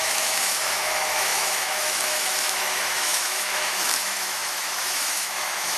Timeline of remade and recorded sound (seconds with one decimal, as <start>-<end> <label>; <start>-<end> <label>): 0.0-5.8 remade